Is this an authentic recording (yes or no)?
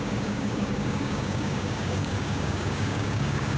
no